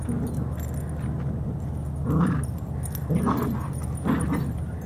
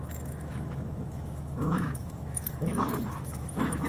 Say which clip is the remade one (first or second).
second